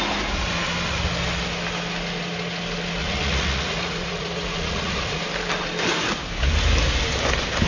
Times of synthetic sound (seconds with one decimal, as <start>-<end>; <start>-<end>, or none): 3.0-5.2